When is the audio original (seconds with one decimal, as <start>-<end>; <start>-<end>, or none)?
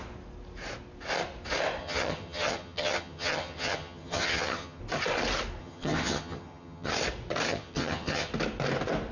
0.0-1.8; 4.8-5.6; 6.9-7.5; 8.3-9.1